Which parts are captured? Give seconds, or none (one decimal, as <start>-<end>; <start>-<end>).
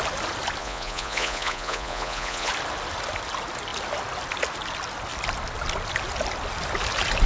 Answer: 0.0-0.6; 2.5-7.3